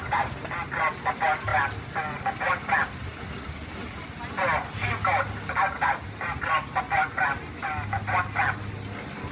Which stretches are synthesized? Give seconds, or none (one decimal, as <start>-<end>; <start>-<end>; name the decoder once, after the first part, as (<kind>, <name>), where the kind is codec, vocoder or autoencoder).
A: none